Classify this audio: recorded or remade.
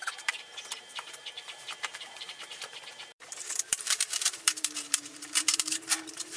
remade